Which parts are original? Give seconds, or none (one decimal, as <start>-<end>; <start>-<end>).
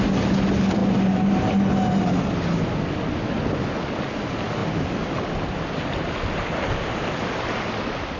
0.0-8.2